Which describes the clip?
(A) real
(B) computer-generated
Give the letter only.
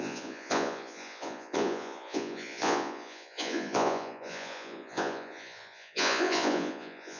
B